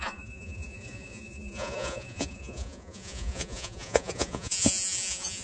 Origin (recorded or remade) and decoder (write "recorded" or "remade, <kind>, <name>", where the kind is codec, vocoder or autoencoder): remade, vocoder, Vocos